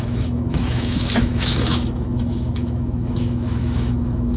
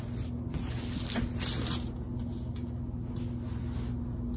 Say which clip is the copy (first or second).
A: first